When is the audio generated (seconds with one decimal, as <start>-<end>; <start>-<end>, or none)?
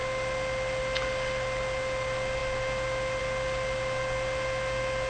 none